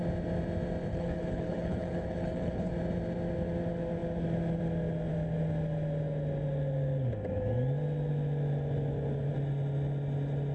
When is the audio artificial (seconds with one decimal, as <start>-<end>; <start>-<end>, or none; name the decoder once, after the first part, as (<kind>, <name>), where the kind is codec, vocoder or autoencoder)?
0.9-2.7 (codec, HILCodec)